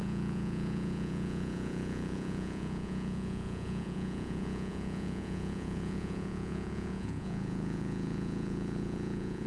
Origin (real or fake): fake